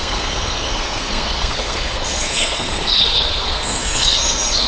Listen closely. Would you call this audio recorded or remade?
remade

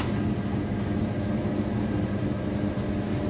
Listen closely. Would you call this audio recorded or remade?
recorded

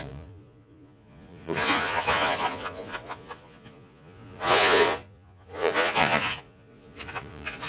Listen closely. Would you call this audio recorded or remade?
remade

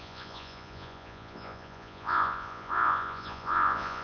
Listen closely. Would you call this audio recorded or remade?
remade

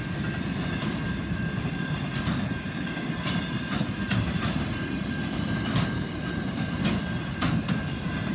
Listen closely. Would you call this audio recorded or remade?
remade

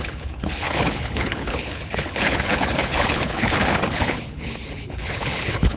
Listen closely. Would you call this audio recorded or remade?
remade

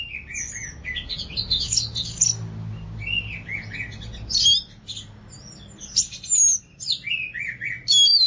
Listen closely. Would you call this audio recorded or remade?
recorded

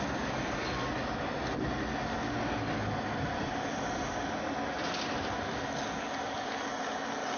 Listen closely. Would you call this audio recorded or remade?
recorded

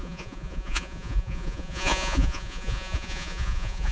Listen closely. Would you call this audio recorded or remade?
remade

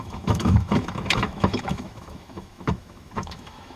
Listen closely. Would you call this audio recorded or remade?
remade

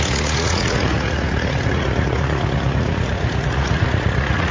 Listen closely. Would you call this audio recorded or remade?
remade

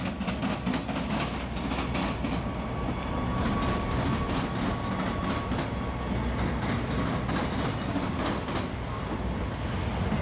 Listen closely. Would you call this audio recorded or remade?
recorded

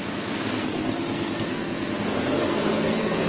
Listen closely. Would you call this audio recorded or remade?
remade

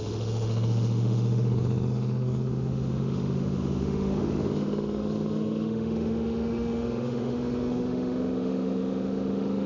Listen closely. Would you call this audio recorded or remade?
remade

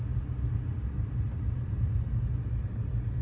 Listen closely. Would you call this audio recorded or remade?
recorded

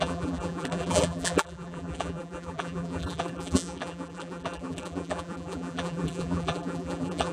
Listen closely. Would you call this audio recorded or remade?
remade